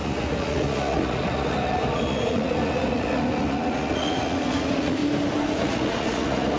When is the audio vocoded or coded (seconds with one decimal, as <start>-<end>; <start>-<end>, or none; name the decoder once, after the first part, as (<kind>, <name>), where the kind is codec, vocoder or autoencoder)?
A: 0.0-5.0 (vocoder, Vocos); 5.5-6.6